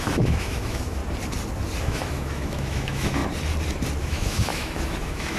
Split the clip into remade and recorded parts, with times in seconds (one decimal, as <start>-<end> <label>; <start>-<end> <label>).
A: 0.0-1.0 remade; 1.0-1.8 recorded; 1.8-3.2 remade; 3.2-4.0 recorded; 4.0-5.4 remade